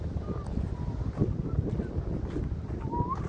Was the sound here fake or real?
real